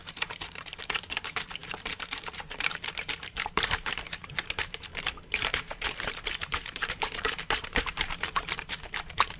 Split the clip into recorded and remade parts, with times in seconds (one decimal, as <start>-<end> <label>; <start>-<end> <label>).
0.0-9.4 remade